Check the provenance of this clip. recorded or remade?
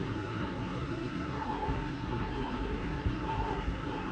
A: remade